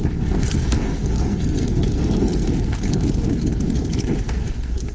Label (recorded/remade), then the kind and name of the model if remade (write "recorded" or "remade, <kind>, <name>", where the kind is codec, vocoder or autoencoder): remade, codec, SNAC